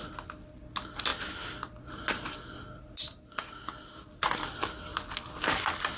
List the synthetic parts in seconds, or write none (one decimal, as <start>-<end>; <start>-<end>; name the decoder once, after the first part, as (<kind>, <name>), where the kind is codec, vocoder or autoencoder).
none